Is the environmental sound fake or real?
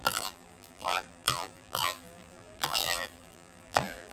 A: fake